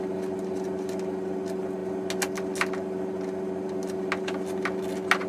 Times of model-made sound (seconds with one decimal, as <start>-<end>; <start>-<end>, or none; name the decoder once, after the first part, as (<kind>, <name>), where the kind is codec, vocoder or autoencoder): none

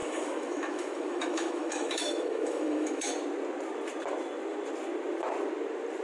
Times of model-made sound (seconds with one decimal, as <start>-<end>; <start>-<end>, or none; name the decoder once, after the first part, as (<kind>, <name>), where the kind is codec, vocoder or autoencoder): 0.0-3.1 (autoencoder, DAC-VAE)